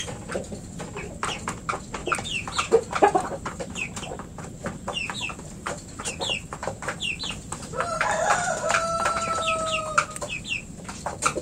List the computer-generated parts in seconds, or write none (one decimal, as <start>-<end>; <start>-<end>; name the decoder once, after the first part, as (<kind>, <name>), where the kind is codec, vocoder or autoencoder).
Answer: 2.0-6.1 (vocoder, BigVGAN v2); 6.6-9.8